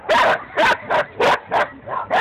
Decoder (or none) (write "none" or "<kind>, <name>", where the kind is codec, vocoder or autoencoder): none